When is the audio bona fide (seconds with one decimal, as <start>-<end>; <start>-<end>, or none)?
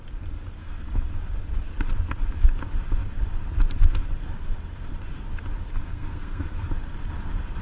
0.0-0.6; 1.1-5.8; 6.7-7.6